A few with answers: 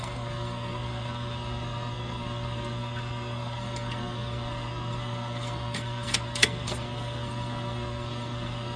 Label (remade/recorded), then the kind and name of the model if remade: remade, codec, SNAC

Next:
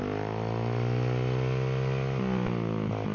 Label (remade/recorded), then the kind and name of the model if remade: recorded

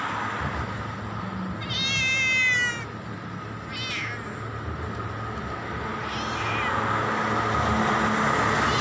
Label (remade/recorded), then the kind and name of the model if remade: recorded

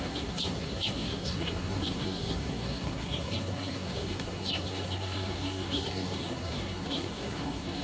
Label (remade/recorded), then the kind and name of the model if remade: remade, codec, SNAC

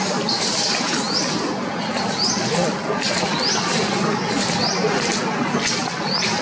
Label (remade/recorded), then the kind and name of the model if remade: recorded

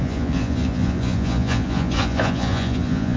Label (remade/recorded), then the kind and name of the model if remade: remade, vocoder, Vocos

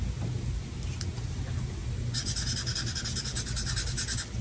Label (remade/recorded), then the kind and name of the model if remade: recorded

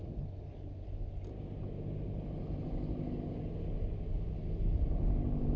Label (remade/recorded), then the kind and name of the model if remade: recorded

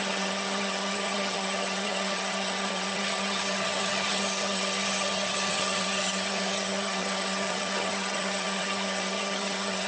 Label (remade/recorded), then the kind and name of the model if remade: remade, vocoder, HiFi-GAN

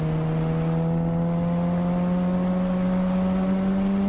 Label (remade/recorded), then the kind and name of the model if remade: recorded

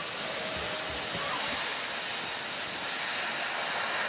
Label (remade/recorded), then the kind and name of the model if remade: recorded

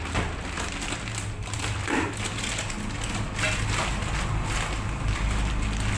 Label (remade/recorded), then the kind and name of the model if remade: recorded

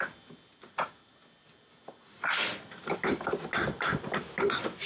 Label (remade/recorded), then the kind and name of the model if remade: recorded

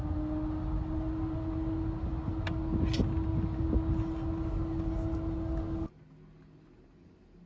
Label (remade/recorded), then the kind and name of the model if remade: recorded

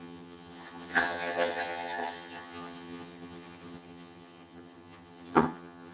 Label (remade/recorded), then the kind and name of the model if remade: remade, vocoder, HiFi-GAN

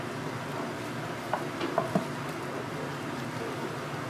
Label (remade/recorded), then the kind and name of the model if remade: recorded